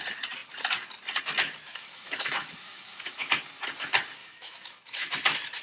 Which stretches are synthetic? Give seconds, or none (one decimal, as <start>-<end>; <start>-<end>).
1.7-3.3; 4.2-5.1